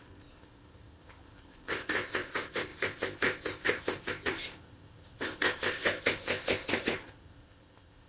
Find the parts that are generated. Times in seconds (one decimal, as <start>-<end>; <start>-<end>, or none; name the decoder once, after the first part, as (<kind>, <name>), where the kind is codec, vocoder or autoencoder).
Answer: 0.0-8.1 (codec, ZipCodec)